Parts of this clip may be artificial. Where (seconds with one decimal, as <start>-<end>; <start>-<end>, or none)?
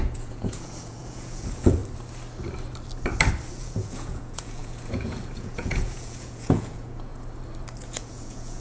0.0-1.8; 3.5-7.1; 7.8-8.6